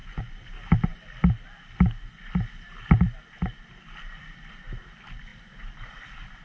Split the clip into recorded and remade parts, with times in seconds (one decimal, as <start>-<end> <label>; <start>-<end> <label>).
0.0-0.5 remade; 0.5-6.4 recorded